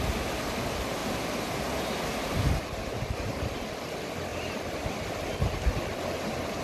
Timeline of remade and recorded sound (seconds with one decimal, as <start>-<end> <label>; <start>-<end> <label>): 0.0-1.0 recorded; 1.0-1.7 remade; 1.7-2.9 recorded; 2.9-3.5 remade; 3.5-4.3 recorded; 4.3-4.9 remade; 4.9-6.6 recorded